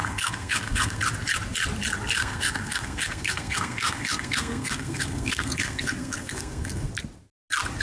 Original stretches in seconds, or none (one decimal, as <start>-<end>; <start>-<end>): 1.0-2.2; 6.9-7.8